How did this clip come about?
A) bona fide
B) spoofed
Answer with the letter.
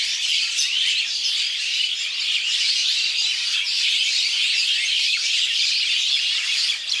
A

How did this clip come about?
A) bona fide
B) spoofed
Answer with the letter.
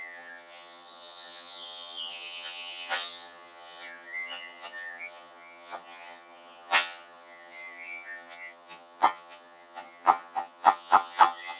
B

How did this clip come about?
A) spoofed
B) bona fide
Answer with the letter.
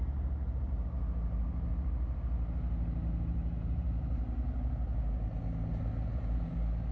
B